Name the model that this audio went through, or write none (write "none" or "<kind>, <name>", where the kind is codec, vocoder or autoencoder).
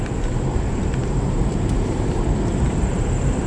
vocoder, BigVGAN v2